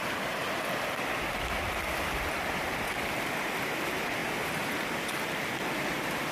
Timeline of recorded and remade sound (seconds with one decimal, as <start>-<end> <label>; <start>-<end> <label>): 0.0-4.2 recorded; 4.2-6.3 remade